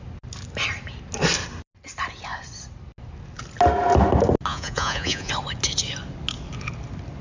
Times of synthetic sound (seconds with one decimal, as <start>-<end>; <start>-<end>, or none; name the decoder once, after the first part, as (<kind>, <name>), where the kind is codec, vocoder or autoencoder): 4.5-5.3 (vocoder, Vocos)